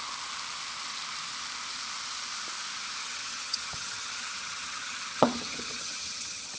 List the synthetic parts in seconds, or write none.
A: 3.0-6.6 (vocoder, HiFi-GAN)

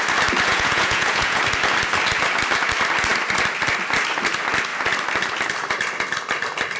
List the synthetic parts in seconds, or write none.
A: 0.5-1.4 (vocoder, Vocos)